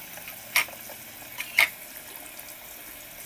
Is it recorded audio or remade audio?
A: recorded